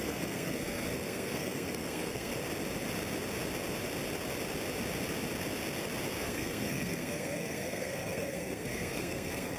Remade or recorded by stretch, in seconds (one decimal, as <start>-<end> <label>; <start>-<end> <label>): 0.0-2.3 remade; 2.3-6.2 recorded; 6.2-9.6 remade